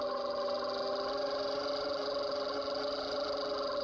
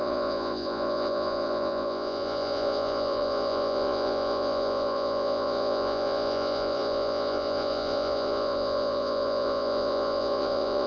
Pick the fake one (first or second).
second